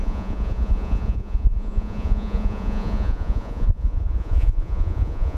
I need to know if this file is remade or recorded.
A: remade